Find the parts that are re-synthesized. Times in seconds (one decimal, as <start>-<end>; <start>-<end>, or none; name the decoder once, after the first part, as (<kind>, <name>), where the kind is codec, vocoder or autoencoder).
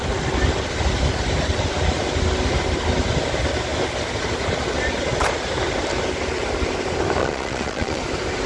7.2-8.0 (vocoder, Vocos)